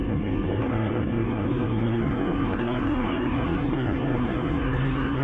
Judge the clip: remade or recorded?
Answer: remade